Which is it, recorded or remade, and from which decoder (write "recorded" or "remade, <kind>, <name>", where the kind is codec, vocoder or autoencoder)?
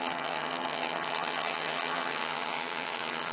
remade, vocoder, HiFi-GAN